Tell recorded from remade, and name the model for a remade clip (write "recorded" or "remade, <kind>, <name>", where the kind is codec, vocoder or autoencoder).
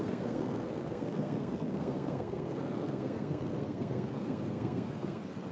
remade, codec, SNAC